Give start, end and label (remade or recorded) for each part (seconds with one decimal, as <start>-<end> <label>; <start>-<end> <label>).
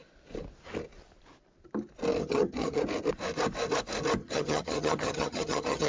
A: 0.0-2.2 recorded; 2.2-2.8 remade; 2.8-4.2 recorded; 4.2-5.9 remade